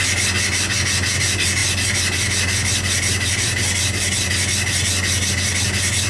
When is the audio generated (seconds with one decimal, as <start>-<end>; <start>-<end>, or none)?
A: none

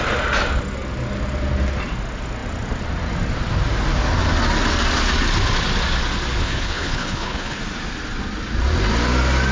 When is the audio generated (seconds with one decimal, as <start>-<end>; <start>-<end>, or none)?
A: 6.4-7.6

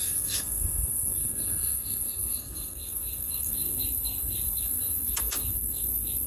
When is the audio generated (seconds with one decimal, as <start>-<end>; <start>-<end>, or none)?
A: 0.0-6.3

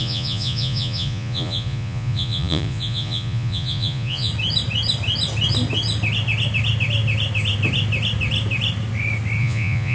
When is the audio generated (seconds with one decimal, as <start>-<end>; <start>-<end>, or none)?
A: 0.0-4.3; 9.4-9.9

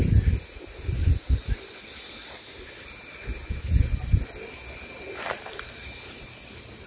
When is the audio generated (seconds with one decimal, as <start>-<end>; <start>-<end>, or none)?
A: 2.2-3.0